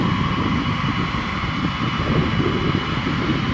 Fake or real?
real